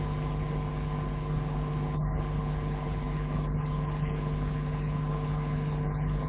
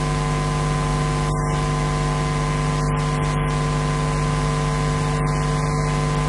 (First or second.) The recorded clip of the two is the second